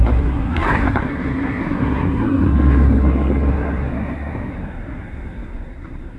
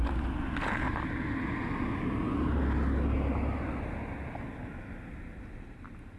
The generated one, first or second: first